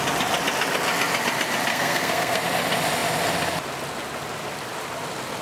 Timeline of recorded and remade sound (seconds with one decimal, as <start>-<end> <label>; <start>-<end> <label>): 0.0-1.7 recorded; 1.7-2.4 remade; 2.4-5.4 recorded